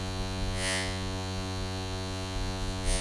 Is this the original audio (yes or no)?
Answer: no